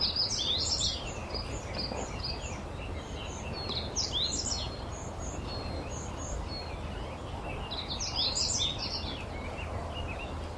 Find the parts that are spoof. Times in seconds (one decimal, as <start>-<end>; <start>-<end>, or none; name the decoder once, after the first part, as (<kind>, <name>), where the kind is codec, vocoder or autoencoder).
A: none